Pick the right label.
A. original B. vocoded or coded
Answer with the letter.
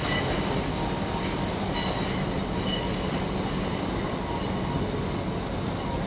A